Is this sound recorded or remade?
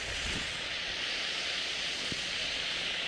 remade